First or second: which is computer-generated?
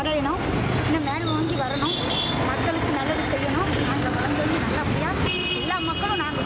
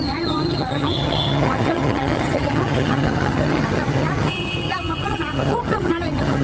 second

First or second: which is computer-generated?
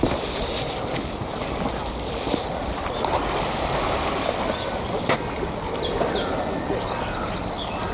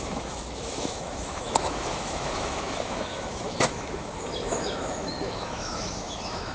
second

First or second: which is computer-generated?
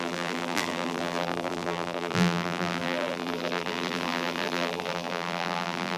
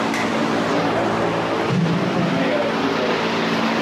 first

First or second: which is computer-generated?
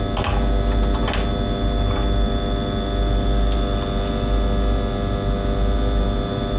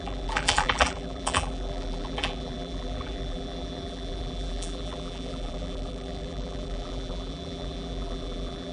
second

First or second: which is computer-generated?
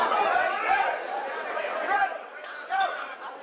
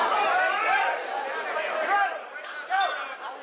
first